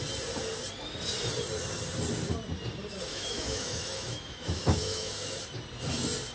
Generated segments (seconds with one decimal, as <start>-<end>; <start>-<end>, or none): 3.1-5.4